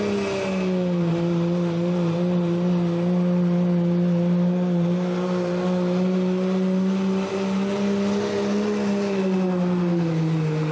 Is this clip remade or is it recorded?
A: recorded